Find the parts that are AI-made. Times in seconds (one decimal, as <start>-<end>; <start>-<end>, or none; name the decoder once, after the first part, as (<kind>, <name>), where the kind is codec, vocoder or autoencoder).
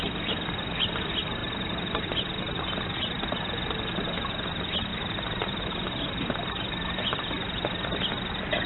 1.4-2.1 (vocoder, BigVGAN v2); 4.9-5.6